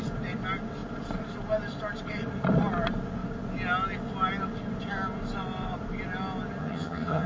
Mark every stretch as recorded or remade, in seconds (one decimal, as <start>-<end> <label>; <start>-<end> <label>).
0.0-6.6 recorded; 6.6-7.3 remade